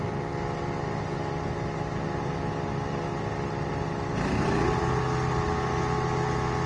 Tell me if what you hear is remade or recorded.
recorded